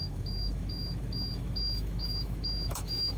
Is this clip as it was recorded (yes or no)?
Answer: no